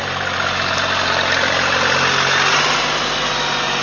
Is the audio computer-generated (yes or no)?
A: no